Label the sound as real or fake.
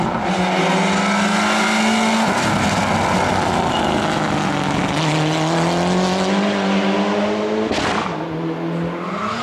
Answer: real